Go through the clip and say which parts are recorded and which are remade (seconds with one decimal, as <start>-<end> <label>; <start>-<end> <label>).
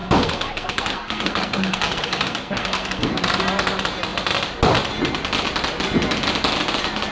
0.0-3.2 remade; 3.2-7.1 recorded